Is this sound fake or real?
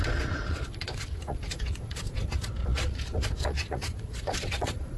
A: fake